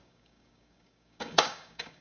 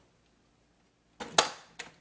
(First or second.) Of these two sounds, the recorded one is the second